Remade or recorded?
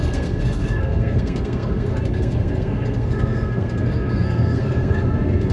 remade